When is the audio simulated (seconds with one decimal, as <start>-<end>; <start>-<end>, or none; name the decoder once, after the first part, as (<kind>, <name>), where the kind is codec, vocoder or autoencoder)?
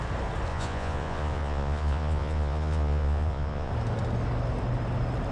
0.5-3.7 (vocoder, Vocos)